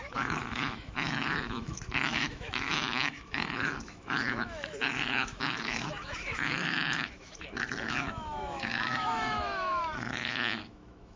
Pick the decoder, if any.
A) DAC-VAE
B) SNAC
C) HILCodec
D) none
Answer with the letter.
A